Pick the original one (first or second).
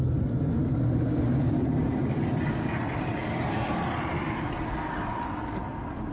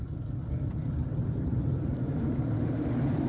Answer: first